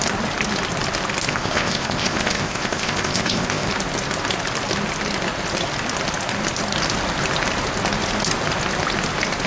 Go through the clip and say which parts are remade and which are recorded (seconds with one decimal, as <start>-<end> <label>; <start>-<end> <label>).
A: 0.0-1.3 recorded; 1.3-3.7 remade; 3.7-9.5 recorded